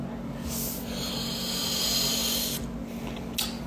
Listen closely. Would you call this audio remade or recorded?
recorded